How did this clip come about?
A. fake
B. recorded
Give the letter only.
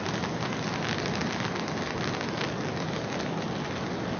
B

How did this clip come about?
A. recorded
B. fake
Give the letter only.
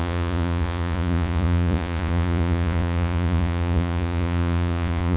B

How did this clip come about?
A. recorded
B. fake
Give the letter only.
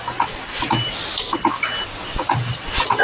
A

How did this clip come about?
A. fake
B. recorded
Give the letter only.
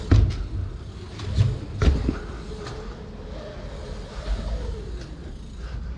B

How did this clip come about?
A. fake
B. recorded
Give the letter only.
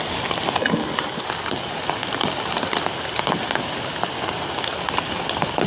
B